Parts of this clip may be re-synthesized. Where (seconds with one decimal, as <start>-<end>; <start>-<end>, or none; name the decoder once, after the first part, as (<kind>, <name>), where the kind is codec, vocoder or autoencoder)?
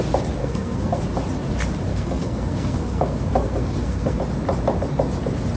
0.4-1.0 (codec, SNAC); 1.9-4.2